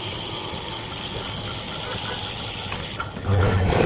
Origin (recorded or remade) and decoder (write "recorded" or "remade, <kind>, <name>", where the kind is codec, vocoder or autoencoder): recorded